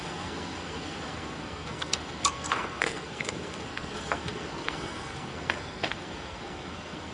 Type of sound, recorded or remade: remade